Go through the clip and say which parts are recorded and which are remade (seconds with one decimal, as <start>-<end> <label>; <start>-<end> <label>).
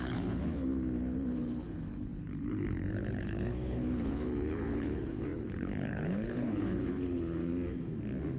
0.0-7.5 remade; 7.5-8.4 recorded